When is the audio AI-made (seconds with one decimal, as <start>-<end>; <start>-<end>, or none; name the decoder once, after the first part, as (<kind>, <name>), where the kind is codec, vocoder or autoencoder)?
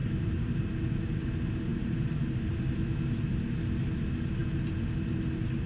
0.0-0.6 (vocoder, BigVGAN v2); 1.7-2.6